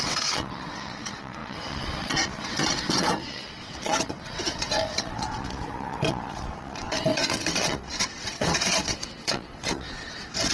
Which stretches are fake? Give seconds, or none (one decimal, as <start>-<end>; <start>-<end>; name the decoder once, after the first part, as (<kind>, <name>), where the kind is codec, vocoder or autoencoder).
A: 0.0-10.5 (vocoder, WaveNeXt)